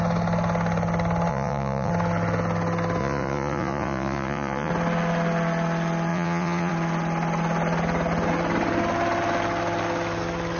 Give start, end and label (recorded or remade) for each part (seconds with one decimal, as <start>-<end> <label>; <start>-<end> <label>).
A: 0.0-1.3 recorded; 1.3-1.9 remade; 1.9-3.0 recorded; 3.0-4.7 remade; 4.7-6.1 recorded; 6.1-6.7 remade; 6.7-10.6 recorded